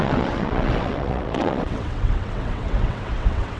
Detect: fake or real fake